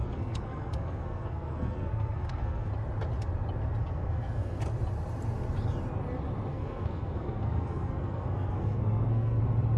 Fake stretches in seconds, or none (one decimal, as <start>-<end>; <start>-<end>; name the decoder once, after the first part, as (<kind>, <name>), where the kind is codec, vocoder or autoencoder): 0.0-2.7 (codec, SNAC); 3.8-4.6; 6.5-9.4